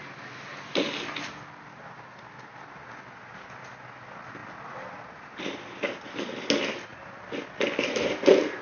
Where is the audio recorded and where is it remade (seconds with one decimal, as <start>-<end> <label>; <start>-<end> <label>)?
0.0-8.6 recorded